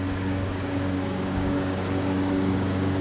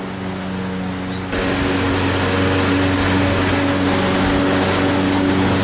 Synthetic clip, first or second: first